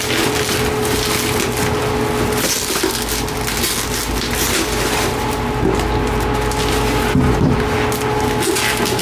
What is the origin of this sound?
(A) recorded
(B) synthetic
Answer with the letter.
A